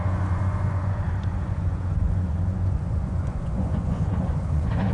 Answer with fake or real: fake